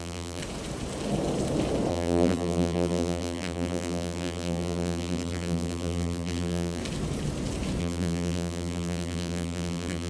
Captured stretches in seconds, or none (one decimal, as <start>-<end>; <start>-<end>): 0.4-1.9; 6.8-7.8